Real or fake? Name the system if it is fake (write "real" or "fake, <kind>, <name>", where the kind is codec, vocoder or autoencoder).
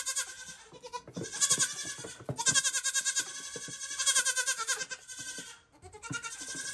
real